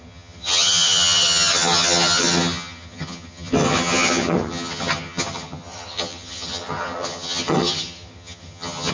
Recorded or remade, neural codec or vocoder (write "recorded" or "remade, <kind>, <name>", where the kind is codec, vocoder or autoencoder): remade, vocoder, HiFi-GAN